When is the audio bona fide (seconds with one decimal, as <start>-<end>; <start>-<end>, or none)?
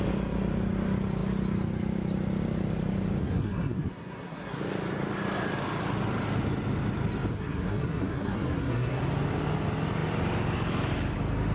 0.0-3.2; 4.6-7.3; 9.0-11.5